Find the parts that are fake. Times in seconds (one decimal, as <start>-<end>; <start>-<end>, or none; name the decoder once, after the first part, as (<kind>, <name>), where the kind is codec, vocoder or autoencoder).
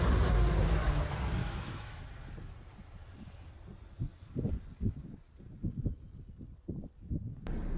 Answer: 1.4-2.0 (autoencoder, DAC-VAE)